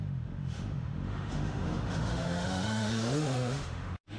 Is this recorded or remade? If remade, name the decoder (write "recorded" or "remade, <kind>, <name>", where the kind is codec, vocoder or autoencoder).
remade, autoencoder, DAC-VAE